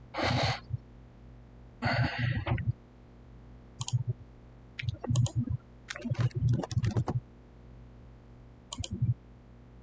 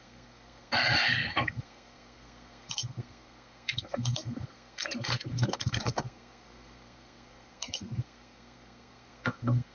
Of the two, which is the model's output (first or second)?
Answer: second